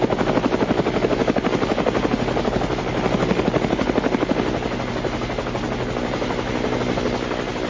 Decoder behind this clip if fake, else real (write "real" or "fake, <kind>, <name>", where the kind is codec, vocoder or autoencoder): real